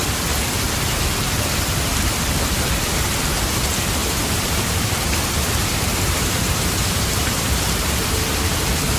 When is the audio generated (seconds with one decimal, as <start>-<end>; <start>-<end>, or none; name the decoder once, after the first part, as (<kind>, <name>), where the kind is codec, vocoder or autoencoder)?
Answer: 4.0-8.1 (vocoder, BigVGAN v2)